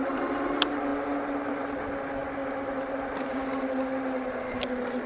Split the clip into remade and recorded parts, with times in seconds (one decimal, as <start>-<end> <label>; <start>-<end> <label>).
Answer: 0.0-5.1 recorded